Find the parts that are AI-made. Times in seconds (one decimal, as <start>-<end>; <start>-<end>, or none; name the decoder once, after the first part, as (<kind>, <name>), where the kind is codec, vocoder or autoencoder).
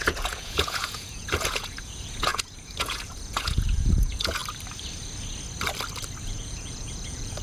0.0-4.4 (vocoder, Vocos); 6.2-7.4